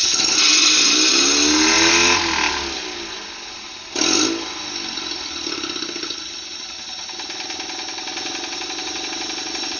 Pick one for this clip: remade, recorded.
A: recorded